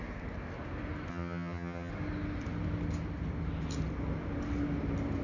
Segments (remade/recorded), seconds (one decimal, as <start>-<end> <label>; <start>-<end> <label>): 0.0-1.1 recorded; 1.1-1.9 remade; 1.9-5.2 recorded